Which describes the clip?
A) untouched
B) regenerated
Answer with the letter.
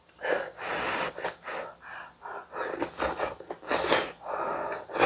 A